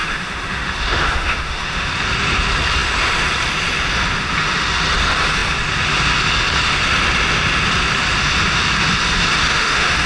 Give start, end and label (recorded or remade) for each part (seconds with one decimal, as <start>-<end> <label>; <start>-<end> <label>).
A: 0.0-1.9 remade; 1.9-9.4 recorded; 9.4-10.1 remade